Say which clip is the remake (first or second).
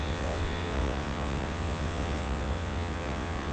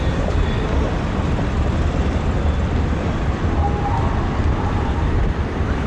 first